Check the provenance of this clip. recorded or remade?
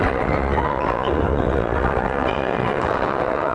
remade